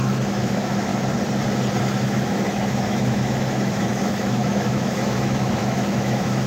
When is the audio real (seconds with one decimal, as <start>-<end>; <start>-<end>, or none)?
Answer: 0.9-1.8